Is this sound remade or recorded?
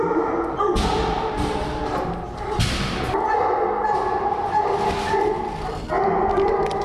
recorded